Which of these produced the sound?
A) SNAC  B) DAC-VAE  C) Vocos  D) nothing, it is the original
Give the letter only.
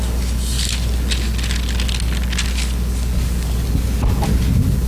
D